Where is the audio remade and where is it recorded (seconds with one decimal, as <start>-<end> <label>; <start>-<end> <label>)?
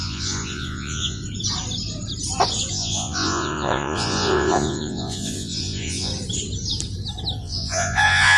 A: 0.0-1.2 remade; 1.2-2.7 recorded; 2.7-6.1 remade; 6.1-7.4 recorded; 7.4-8.4 remade